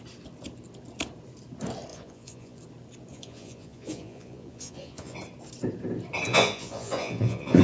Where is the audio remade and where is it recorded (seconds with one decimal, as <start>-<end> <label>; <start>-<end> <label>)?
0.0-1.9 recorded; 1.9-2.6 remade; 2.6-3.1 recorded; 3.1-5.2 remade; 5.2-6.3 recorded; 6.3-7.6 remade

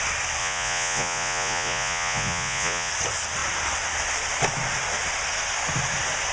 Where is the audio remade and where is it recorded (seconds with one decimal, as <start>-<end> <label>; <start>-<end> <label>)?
0.0-0.4 recorded; 0.4-2.9 remade; 2.9-6.3 recorded

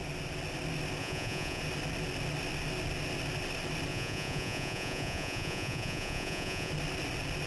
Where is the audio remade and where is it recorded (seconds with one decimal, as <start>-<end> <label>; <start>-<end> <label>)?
0.0-1.0 recorded; 1.0-1.6 remade; 1.6-3.9 recorded; 3.9-6.7 remade; 6.7-7.5 recorded

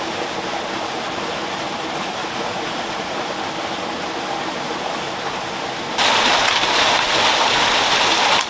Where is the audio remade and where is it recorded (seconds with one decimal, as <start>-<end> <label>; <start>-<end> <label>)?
0.0-2.2 recorded; 2.2-3.3 remade; 3.3-8.5 recorded

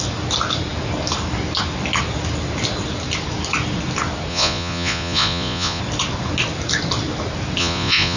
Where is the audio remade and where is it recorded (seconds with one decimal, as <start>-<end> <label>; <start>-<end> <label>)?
0.0-4.3 recorded; 4.3-5.8 remade; 5.8-7.6 recorded; 7.6-8.2 remade

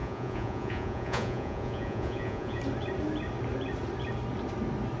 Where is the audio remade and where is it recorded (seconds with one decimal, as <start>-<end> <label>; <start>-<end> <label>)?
0.0-2.6 remade; 2.6-5.0 recorded

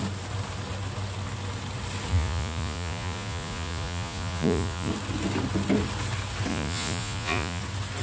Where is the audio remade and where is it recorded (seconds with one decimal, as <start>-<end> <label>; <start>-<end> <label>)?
0.0-2.1 recorded; 2.1-4.9 remade; 4.9-6.5 recorded; 6.5-7.6 remade; 7.6-8.0 recorded

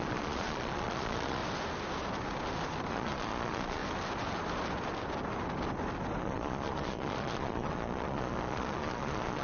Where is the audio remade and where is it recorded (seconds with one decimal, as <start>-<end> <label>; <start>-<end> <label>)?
0.0-1.4 remade; 1.4-2.9 recorded; 2.9-3.8 remade; 3.8-6.2 recorded; 6.2-9.4 remade